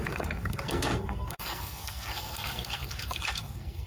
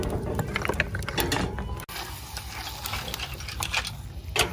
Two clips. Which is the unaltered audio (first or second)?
second